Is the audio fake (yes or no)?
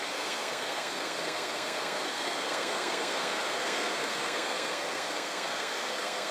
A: yes